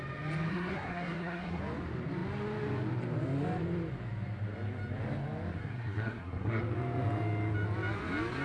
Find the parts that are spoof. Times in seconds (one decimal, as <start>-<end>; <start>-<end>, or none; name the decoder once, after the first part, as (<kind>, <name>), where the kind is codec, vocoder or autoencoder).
0.5-1.6 (codec, SNAC); 5.6-6.6